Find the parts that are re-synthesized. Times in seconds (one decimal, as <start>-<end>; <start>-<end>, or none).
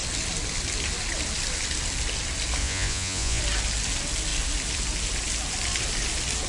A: 2.6-3.4